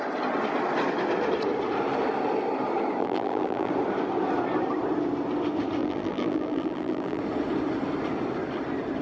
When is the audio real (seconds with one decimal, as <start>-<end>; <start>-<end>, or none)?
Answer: 0.0-3.0; 3.7-5.8; 7.2-9.0